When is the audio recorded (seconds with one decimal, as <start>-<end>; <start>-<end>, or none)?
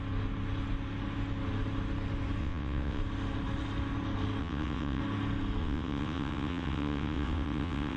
0.0-2.4; 3.0-4.4; 5.0-5.6